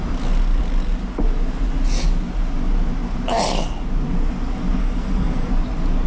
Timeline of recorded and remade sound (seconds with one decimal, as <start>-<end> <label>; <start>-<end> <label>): 0.0-4.8 recorded; 4.8-5.5 remade; 5.5-6.1 recorded